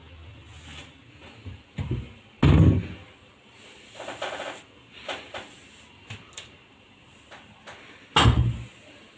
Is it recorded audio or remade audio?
recorded